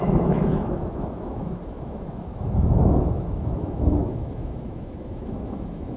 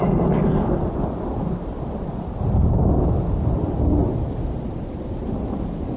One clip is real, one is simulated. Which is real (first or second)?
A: second